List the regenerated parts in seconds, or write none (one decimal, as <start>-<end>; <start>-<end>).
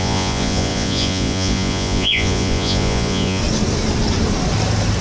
0.0-3.4